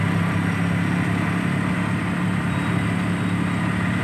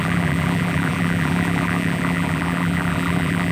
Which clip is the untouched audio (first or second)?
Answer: first